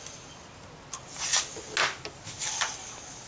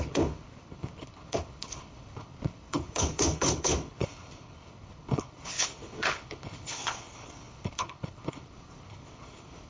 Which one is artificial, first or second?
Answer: second